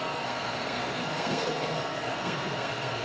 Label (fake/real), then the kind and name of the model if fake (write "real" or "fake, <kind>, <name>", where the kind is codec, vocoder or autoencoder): fake, codec, SNAC